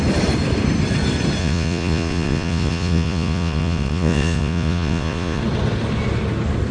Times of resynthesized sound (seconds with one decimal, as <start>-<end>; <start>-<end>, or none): 1.4-5.4